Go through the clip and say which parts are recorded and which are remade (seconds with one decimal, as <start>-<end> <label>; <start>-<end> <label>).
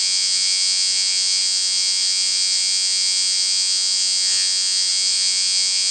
0.0-5.9 remade